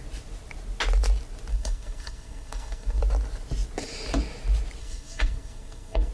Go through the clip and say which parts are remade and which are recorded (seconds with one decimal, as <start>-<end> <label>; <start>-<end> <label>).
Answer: 0.0-1.5 recorded; 1.5-3.0 remade; 3.0-4.8 recorded; 4.8-6.1 remade